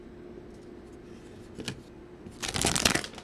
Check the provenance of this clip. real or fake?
real